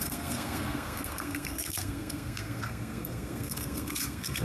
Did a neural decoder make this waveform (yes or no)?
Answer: yes